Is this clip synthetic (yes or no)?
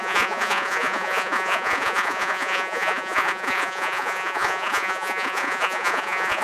yes